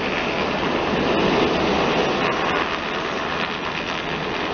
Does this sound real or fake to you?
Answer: real